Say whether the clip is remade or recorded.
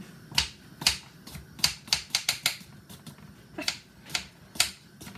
recorded